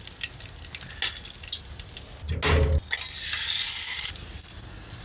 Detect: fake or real real